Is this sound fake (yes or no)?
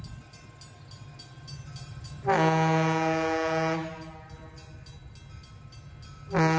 no